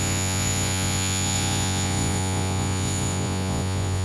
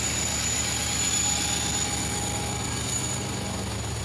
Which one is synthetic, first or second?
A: first